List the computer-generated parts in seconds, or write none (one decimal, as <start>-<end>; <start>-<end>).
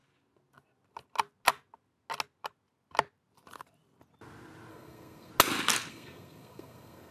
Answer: 4.7-5.3; 5.9-7.1